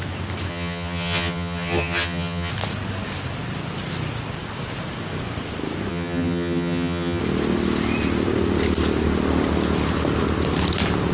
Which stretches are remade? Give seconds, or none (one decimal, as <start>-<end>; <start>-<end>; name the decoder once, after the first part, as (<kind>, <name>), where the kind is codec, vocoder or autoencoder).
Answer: 0.5-2.5 (vocoder, HiFi-GAN); 5.9-7.2